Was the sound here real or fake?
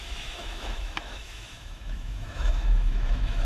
fake